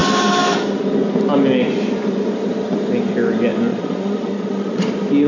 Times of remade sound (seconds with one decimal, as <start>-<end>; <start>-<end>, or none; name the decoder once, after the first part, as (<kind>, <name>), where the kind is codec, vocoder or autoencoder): 3.7-4.8 (vocoder, Vocos)

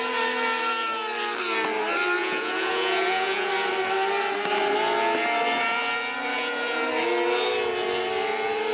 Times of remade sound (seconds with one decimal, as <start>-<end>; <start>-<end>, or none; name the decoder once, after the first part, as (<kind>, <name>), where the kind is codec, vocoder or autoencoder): 2.2-3.5 (vocoder, Vocos); 6.3-6.9

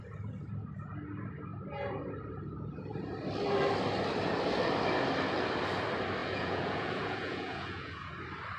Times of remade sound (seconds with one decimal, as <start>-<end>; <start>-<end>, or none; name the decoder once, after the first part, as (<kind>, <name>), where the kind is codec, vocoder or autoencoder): 6.2-8.1 (vocoder, Vocos)

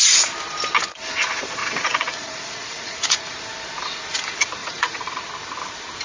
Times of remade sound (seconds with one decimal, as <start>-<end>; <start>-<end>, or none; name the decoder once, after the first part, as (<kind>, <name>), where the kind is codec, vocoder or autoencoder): 1.6-3.4 (vocoder, Vocos); 4.6-5.2

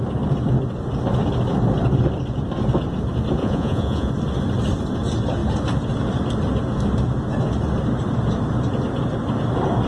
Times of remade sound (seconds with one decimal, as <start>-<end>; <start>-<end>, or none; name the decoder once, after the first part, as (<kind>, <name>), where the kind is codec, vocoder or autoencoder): 3.4-4.1 (vocoder, Vocos)